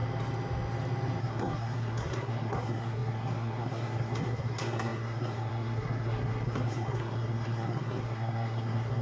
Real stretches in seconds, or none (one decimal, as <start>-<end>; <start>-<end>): 0.0-1.2